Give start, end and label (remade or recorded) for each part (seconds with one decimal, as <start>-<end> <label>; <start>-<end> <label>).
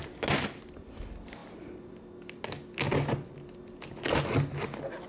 0.0-5.1 recorded